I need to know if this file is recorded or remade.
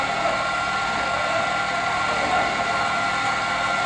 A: recorded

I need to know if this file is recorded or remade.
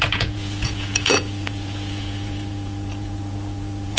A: remade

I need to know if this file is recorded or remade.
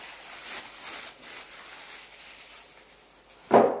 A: recorded